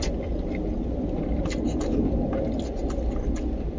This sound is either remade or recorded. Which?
recorded